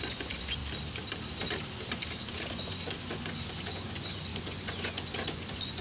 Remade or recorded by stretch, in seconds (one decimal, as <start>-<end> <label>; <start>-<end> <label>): 0.0-0.6 remade; 0.6-2.5 recorded; 2.5-5.8 remade